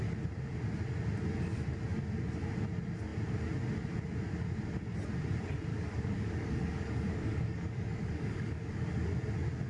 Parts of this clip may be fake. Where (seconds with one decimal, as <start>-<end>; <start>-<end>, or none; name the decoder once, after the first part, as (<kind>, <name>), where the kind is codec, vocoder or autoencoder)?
5.7-8.7 (codec, DAC)